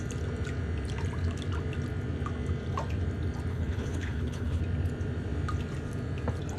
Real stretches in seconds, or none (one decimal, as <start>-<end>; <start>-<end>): 0.0-3.5; 4.6-6.6